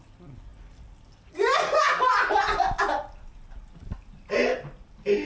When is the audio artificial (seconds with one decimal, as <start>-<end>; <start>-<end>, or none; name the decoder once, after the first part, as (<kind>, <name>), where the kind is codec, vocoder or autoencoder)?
none